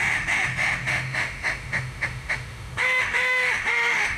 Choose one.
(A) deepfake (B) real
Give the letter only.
A